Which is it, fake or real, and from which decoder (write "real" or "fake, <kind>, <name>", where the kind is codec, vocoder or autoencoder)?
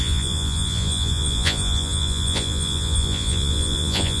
fake, vocoder, Vocos